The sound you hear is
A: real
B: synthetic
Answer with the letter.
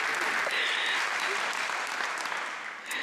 A